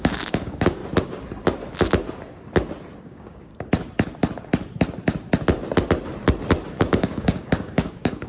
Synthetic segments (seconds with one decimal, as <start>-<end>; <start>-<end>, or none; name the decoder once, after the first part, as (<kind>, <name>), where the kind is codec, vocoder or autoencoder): 0.0-0.8 (codec, DAC); 3.0-3.5; 6.7-8.3